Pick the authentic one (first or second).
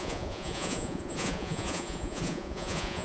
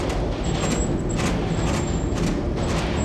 second